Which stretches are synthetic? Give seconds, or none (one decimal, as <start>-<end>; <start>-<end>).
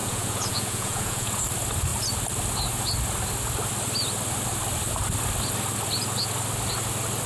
0.0-1.4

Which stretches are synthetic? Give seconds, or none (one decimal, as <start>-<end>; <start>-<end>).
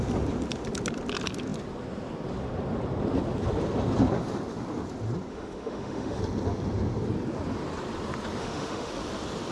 5.3-6.2; 8.4-8.9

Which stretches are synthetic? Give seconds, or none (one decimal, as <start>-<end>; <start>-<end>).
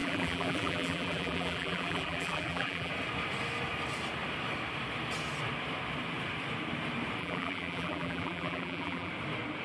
0.0-2.9; 7.2-9.1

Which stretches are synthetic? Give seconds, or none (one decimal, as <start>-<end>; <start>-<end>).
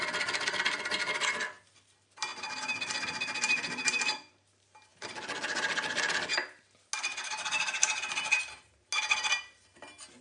none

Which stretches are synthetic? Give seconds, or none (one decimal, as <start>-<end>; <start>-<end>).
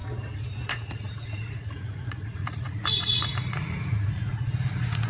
0.7-5.1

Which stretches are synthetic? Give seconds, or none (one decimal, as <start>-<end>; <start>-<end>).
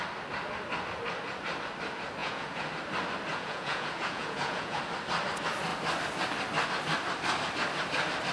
2.2-2.7; 3.3-4.8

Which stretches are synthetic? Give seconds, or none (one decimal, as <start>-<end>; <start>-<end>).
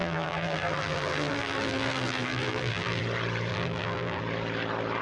0.0-3.0; 3.5-4.2